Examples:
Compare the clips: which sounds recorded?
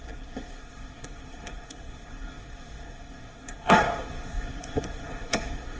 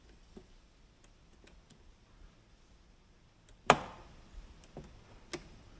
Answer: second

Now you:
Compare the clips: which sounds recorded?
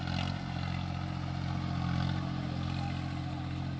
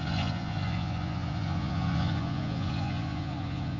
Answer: first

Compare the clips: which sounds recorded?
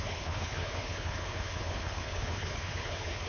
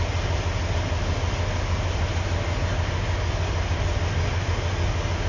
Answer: second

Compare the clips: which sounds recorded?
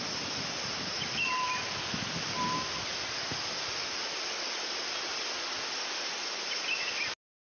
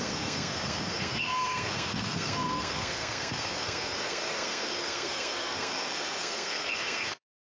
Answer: first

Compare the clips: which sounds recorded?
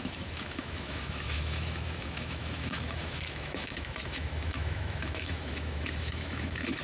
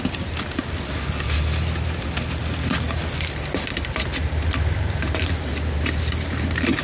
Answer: second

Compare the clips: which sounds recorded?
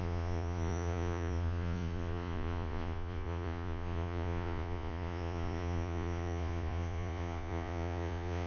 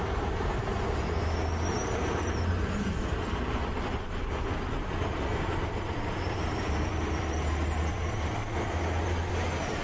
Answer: second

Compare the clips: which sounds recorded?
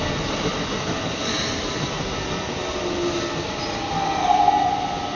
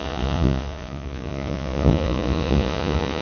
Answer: first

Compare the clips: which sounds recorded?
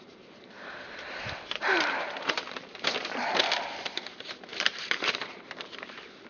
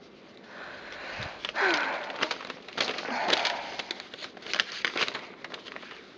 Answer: second